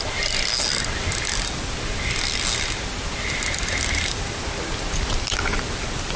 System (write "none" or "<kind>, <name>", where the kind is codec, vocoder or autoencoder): none